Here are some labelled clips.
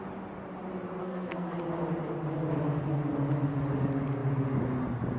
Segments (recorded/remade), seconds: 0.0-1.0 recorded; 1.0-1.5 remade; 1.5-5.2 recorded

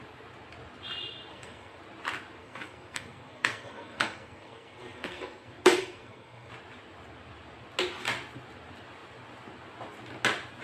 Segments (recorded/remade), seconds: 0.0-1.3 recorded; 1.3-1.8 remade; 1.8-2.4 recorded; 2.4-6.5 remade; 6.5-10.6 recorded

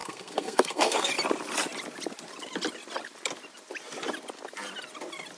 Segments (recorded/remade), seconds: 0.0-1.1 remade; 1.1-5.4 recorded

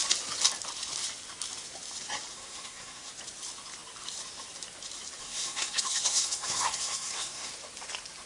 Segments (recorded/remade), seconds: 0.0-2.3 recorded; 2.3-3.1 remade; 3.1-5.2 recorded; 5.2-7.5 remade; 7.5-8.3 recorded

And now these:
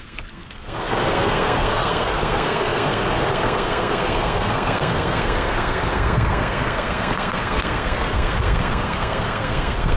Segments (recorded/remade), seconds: 0.0-10.0 remade

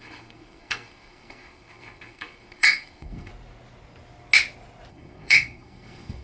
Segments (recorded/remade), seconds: 0.0-3.3 remade; 3.3-4.9 recorded; 4.9-6.2 remade